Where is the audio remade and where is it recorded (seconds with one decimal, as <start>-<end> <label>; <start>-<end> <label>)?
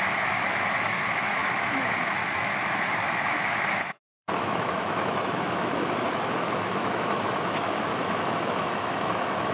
0.0-9.5 remade